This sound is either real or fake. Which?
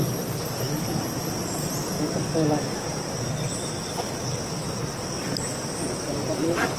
real